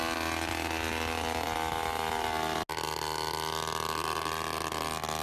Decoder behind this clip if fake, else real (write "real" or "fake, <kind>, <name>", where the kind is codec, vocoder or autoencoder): real